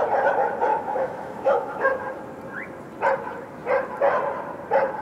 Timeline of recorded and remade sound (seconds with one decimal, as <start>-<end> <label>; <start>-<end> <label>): 0.0-0.7 recorded; 0.7-2.0 remade; 2.0-5.0 recorded